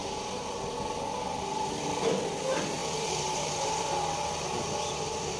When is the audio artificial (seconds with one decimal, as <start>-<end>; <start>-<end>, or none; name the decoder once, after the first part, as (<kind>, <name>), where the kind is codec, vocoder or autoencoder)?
2.8-4.0 (vocoder, BigVGAN v2)